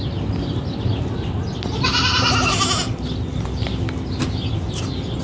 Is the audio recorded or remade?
recorded